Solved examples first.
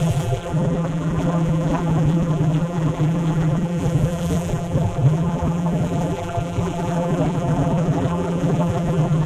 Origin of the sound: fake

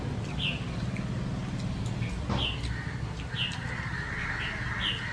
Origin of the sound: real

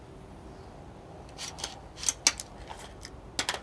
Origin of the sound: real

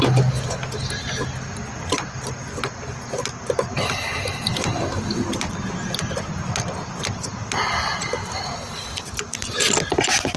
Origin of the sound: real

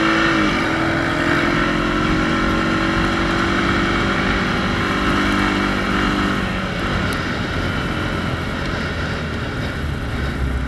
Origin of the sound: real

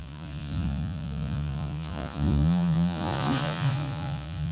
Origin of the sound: fake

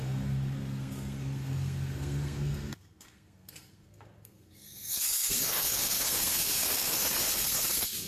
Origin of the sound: fake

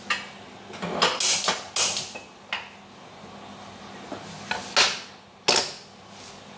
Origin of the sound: real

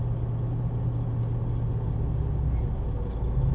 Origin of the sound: real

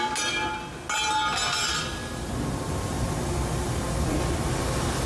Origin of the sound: real